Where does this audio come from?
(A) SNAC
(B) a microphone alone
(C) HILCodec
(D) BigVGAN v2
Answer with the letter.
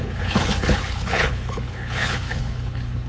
C